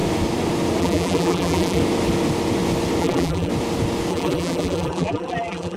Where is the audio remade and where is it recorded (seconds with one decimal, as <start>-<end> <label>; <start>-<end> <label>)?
0.0-0.8 recorded; 0.8-1.8 remade; 1.8-3.0 recorded; 3.0-3.5 remade; 3.5-4.1 recorded; 4.1-5.8 remade